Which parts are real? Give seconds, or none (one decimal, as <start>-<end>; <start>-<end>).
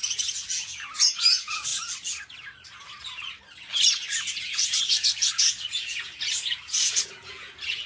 1.7-4.3